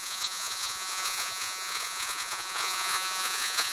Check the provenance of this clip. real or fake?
fake